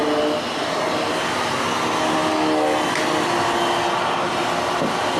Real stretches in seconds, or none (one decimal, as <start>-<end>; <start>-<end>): 0.0-5.2